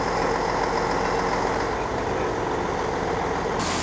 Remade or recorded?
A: recorded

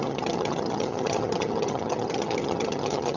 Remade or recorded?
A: remade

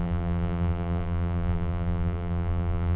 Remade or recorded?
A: remade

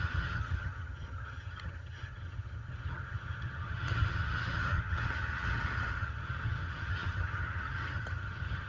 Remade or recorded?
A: remade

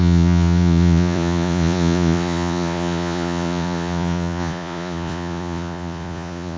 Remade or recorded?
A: remade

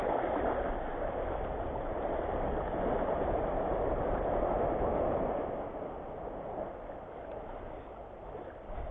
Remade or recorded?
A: recorded